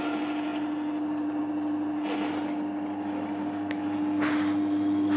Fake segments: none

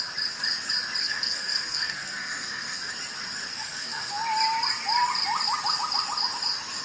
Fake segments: 1.0-2.9; 3.5-4.1

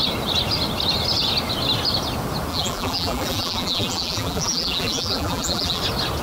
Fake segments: 2.5-5.8

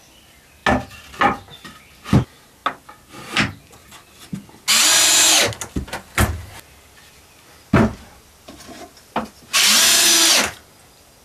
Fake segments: none